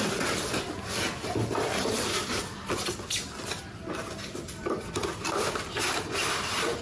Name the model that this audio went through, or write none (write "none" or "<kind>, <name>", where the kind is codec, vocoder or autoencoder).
none